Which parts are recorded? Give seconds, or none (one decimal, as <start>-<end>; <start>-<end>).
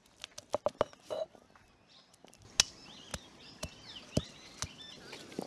0.0-5.5